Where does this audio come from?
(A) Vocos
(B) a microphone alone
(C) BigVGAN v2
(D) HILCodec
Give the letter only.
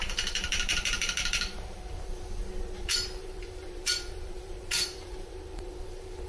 C